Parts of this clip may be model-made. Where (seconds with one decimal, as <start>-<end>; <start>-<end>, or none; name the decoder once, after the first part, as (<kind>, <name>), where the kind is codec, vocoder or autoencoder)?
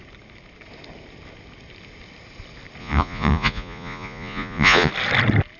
2.8-4.9 (vocoder, Vocos)